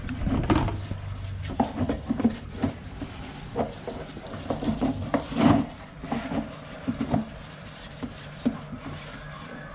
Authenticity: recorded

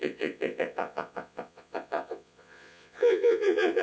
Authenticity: remade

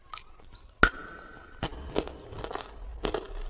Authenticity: recorded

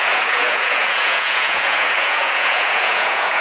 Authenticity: remade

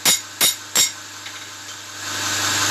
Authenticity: recorded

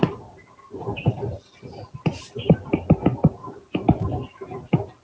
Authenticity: recorded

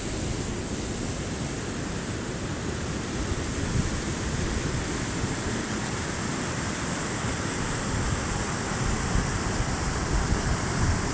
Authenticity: recorded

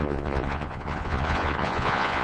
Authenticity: remade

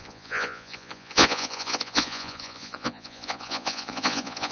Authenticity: remade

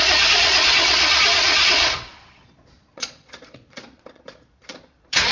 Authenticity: remade